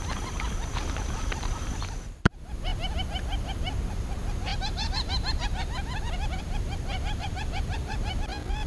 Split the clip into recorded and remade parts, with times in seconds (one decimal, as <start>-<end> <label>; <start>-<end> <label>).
0.0-2.7 remade; 2.7-3.9 recorded; 3.9-8.7 remade